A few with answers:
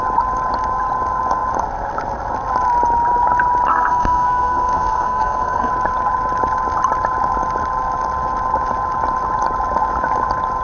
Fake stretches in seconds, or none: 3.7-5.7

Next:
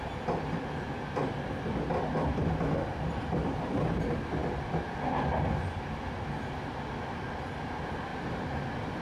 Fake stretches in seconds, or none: 3.4-3.9; 8.1-9.0

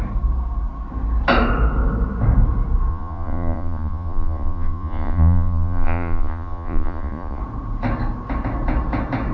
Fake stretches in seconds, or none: 2.9-7.4

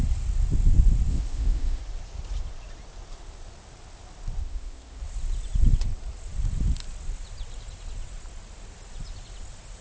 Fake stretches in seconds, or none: 1.1-1.8; 4.4-5.0

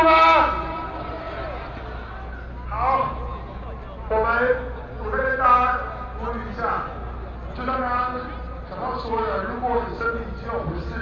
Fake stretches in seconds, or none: none

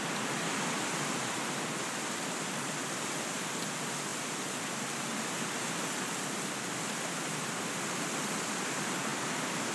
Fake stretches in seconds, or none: none